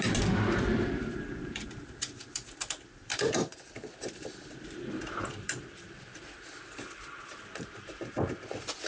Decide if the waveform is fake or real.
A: fake